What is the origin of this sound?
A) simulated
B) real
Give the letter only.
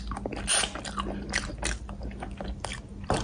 B